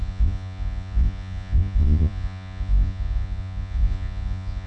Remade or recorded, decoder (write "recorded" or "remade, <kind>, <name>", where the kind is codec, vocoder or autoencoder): remade, vocoder, Vocos